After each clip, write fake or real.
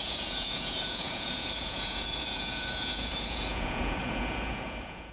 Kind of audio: fake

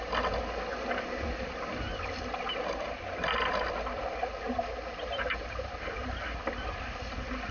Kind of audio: real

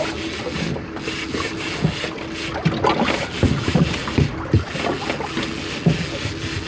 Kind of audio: real